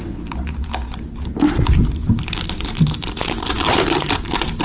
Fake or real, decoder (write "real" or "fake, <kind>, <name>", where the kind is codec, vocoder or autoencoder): fake, vocoder, BigVGAN v2